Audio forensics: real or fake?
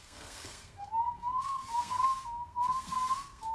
fake